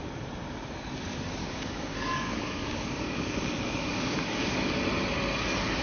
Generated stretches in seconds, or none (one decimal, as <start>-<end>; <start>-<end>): 1.4-4.8